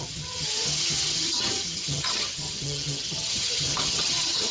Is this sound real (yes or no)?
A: no